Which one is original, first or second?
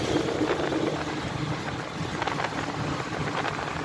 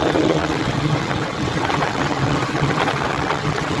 first